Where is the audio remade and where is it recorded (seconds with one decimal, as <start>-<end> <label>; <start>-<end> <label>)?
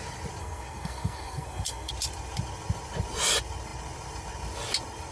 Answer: 0.0-0.4 recorded; 0.4-1.9 remade; 1.9-5.1 recorded